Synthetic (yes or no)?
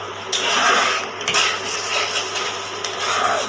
no